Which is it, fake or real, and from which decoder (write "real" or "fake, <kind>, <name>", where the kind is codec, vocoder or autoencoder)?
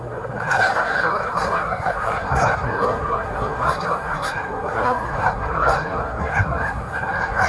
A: fake, codec, SNAC